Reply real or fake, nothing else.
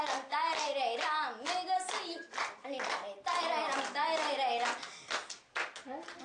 real